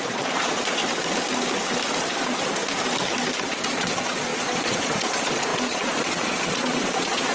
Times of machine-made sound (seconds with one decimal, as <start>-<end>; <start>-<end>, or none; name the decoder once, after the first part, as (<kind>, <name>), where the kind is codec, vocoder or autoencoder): 0.0-0.8 (vocoder, Vocos); 2.2-2.6; 3.4-7.3